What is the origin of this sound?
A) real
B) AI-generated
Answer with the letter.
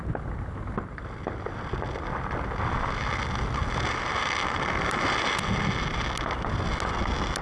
A